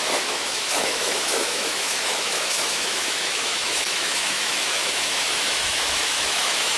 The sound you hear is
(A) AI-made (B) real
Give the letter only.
A